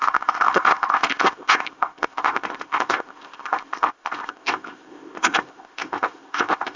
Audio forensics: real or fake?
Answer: fake